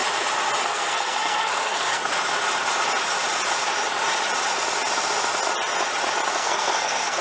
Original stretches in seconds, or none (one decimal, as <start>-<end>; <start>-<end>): 0.0-0.6; 2.0-6.3